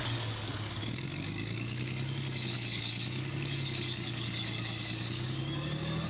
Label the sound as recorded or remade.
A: remade